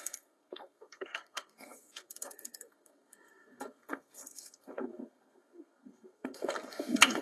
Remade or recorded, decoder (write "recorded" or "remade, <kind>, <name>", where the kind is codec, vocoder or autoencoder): remade, codec, SNAC